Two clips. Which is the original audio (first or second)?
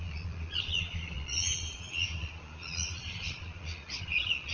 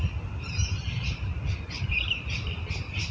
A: second